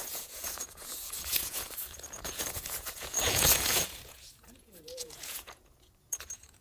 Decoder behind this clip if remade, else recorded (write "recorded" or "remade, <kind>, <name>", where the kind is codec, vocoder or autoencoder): remade, vocoder, Vocos